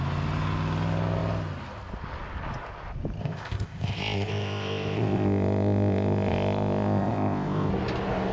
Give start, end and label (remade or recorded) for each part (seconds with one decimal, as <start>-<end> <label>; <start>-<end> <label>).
0.0-3.2 recorded; 3.2-7.7 remade; 7.7-8.3 recorded

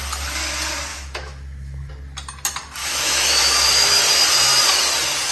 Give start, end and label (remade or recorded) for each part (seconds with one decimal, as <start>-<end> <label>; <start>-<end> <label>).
0.0-0.9 recorded; 0.9-1.9 remade; 1.9-2.8 recorded; 2.8-4.0 remade; 4.0-5.3 recorded